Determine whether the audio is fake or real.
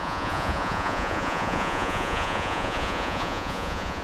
fake